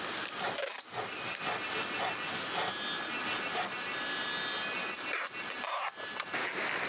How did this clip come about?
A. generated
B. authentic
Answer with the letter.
B